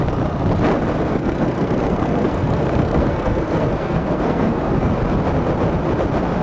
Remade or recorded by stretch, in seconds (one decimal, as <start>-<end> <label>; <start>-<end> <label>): 0.0-1.1 recorded; 1.1-4.9 remade; 4.9-6.4 recorded